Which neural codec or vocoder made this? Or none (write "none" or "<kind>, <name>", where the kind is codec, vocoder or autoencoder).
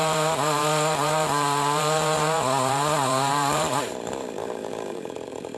vocoder, BigVGAN v2